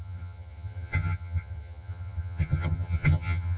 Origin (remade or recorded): remade